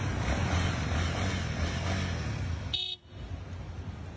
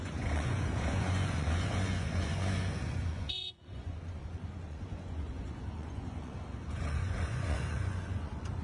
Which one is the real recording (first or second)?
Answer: first